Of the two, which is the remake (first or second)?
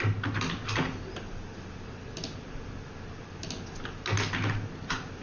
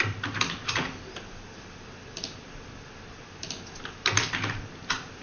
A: second